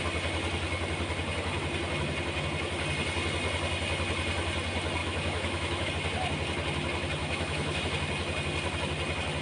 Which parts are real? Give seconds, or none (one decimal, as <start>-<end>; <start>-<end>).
0.0-5.0; 5.9-7.2; 7.8-9.4